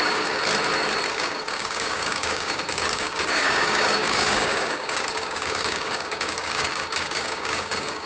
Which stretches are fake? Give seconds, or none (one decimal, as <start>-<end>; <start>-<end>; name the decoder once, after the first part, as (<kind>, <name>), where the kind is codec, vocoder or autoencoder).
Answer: 0.0-0.4 (codec, DAC); 1.1-8.1